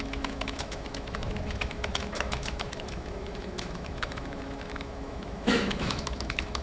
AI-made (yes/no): yes